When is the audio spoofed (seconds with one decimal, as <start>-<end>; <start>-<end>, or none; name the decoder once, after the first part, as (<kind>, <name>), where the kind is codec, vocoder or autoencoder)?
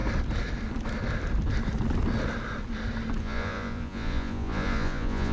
3.2-5.3 (vocoder, Vocos)